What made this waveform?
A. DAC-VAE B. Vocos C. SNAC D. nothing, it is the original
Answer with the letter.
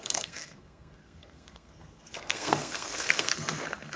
C